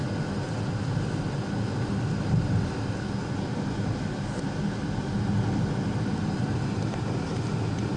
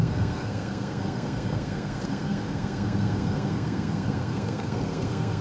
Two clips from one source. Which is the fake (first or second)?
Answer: second